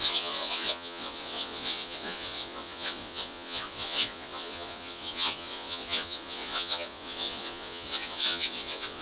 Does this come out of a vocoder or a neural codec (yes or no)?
yes